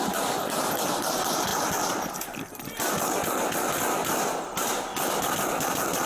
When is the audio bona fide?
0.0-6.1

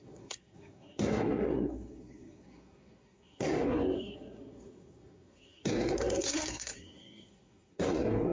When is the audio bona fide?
none

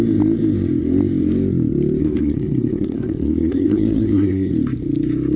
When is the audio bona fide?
0.0-2.0; 4.5-5.4